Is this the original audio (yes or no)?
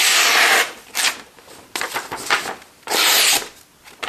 yes